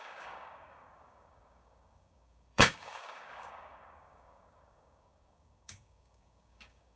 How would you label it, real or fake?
fake